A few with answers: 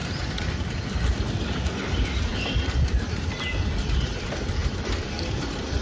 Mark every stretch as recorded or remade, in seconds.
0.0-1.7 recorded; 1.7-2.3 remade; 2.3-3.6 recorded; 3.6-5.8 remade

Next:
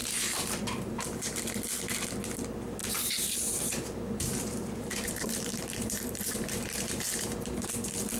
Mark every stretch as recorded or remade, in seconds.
0.0-1.4 remade; 1.4-2.8 recorded; 2.8-7.7 remade; 7.7-8.2 recorded

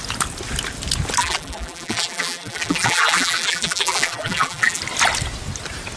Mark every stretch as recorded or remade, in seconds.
0.0-1.2 recorded; 1.2-4.8 remade; 4.8-6.0 recorded